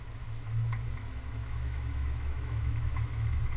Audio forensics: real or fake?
fake